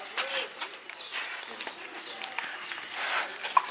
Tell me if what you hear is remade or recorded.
recorded